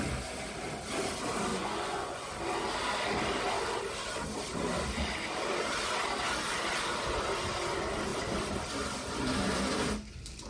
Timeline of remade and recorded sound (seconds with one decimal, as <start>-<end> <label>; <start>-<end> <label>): 0.0-1.5 recorded; 1.5-2.3 remade; 2.3-10.5 recorded